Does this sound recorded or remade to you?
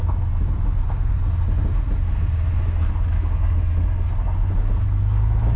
recorded